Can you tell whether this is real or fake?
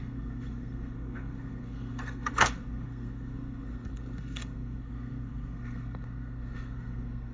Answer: fake